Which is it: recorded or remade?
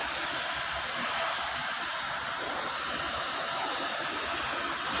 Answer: recorded